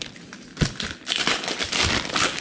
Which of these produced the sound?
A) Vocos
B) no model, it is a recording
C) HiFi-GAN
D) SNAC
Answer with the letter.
B